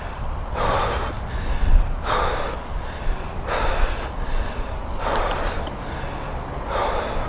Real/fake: real